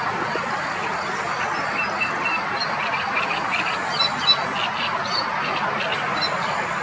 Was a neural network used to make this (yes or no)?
no